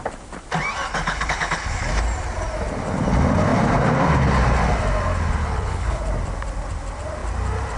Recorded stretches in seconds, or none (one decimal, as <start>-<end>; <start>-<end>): 0.0-0.9; 1.9-5.4; 6.0-7.8